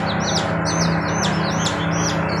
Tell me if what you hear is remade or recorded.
recorded